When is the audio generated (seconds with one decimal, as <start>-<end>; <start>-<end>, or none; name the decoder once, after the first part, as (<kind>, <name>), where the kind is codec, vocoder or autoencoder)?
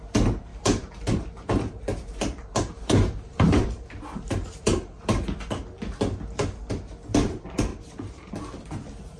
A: 0.5-5.0 (vocoder, BigVGAN v2); 7.7-8.3